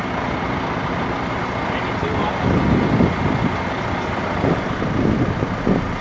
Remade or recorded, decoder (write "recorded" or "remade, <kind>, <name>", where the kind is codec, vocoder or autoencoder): recorded